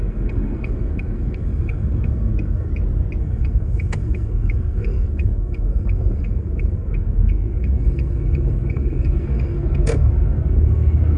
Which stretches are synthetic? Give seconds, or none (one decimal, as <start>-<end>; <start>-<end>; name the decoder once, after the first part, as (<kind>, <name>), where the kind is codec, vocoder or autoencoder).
0.0-2.7 (codec, SNAC); 3.2-11.2